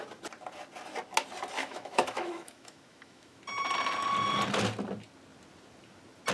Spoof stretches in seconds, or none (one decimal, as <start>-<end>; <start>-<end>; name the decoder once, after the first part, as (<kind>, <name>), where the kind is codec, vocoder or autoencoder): 1.6-3.4 (autoencoder, DAC-VAE)